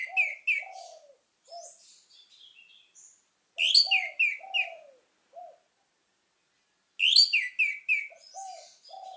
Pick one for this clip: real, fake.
real